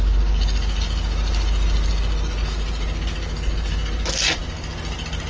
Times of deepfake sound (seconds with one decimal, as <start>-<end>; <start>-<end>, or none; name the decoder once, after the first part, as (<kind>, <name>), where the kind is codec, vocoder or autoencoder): none